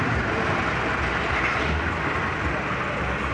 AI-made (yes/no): no